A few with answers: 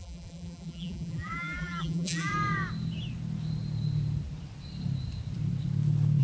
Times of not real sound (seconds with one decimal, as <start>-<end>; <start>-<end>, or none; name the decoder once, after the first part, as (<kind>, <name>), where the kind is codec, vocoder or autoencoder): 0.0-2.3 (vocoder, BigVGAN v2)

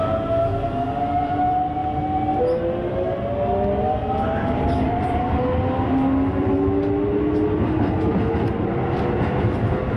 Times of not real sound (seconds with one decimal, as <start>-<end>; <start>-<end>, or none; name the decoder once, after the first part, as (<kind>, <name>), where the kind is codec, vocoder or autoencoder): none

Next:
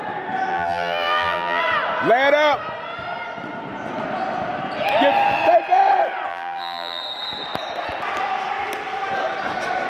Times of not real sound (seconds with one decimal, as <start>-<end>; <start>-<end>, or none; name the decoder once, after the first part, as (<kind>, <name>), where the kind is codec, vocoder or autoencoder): 0.5-1.6 (vocoder, BigVGAN v2); 6.3-7.0

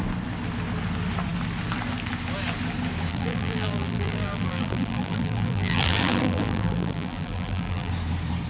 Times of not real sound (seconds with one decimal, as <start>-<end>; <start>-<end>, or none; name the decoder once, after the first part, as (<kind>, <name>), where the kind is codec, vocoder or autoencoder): 3.1-7.9 (vocoder, BigVGAN v2)

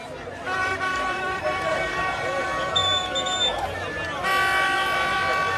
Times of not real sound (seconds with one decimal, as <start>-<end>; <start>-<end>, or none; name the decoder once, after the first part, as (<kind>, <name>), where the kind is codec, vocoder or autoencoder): 0.6-1.7 (vocoder, BigVGAN v2)

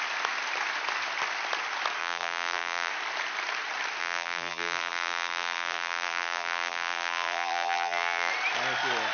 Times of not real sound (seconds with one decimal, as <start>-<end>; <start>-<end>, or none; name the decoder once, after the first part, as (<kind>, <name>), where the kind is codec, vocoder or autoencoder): 2.0-2.9 (vocoder, BigVGAN v2); 4.0-8.3